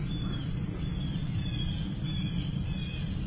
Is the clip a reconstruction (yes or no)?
no